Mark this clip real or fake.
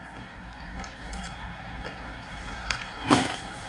fake